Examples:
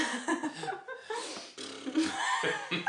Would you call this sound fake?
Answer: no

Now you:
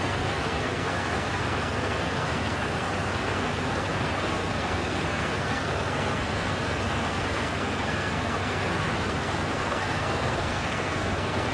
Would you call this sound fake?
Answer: yes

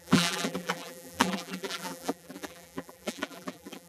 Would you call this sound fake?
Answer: yes